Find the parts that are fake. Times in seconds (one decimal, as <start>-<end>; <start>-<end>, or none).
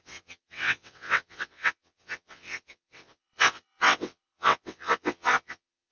0.0-5.9